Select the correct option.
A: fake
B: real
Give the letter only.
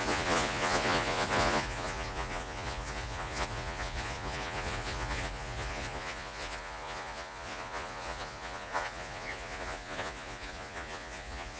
A